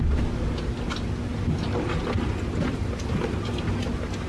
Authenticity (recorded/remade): recorded